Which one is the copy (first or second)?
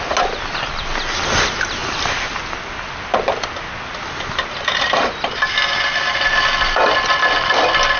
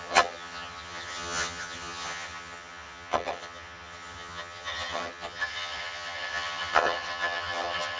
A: second